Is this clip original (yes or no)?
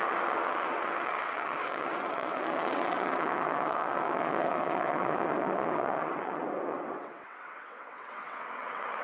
no